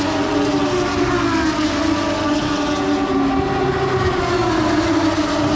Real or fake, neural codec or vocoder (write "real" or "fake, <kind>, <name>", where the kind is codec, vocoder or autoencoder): real